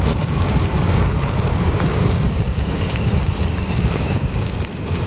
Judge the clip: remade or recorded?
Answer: remade